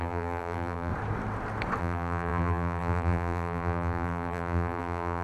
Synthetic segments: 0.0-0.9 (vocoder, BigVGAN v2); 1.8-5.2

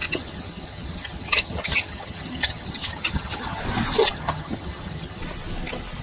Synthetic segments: 0.0-3.6 (vocoder, HiFi-GAN); 4.0-5.2

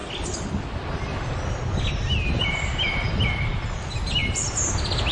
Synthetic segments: none

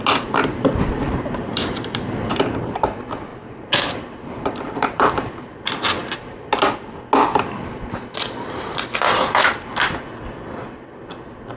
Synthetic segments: 0.4-2.4 (vocoder, BigVGAN v2); 3.3-5.1

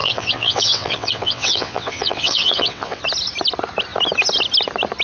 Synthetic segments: 0.0-3.0 (vocoder, WaveNeXt)

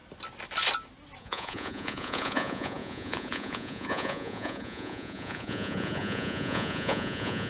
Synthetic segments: 1.2-7.5 (vocoder, Vocos)